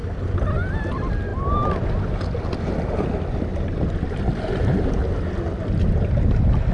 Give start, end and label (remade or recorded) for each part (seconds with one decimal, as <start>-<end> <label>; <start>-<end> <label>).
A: 0.0-3.5 recorded; 3.5-4.9 remade; 4.9-6.7 recorded